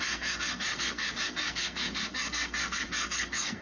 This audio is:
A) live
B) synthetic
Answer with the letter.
B